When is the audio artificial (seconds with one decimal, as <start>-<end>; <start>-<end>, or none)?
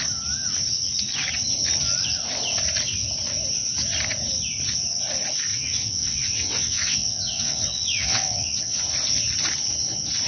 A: 5.5-8.8